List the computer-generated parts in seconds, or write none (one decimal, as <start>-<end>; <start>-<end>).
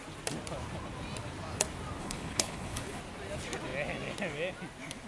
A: 2.0-3.0